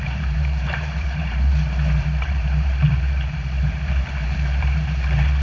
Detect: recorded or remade remade